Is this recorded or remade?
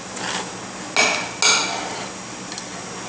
recorded